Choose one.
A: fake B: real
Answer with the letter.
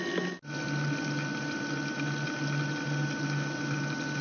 B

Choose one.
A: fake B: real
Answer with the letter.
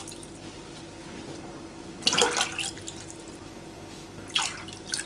B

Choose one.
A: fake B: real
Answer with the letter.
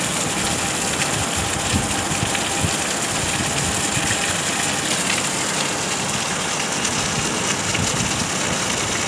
B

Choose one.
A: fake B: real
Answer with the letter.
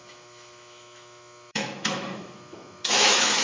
A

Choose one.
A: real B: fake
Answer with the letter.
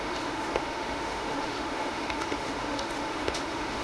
B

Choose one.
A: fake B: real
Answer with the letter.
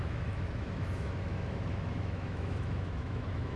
A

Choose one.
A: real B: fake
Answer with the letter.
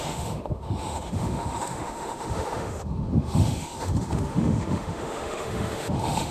B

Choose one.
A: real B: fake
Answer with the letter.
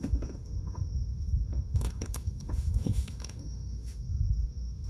B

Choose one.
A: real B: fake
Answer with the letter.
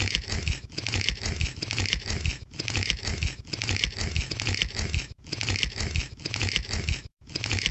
B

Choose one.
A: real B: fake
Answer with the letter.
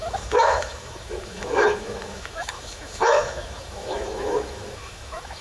B